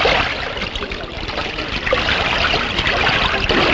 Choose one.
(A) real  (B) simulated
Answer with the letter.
A